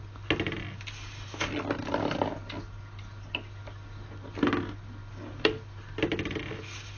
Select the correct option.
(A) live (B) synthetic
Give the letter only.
A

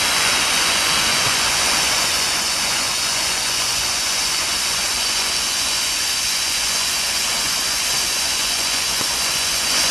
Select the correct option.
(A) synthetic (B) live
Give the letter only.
A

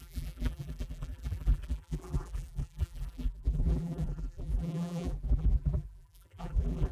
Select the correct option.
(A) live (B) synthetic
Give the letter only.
B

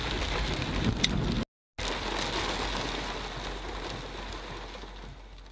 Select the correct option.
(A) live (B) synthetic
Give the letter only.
A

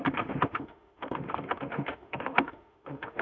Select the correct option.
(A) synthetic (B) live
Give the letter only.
A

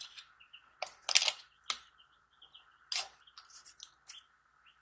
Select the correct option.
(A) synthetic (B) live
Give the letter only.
B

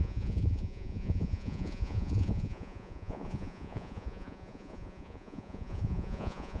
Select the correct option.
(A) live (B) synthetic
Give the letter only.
B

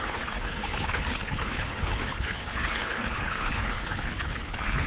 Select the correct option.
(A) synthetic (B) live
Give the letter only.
A